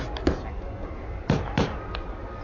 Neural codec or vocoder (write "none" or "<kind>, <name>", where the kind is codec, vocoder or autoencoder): none